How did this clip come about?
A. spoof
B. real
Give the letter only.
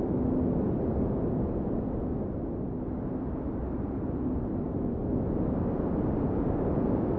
B